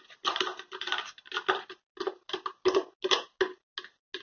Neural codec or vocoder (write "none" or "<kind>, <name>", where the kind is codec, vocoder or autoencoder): none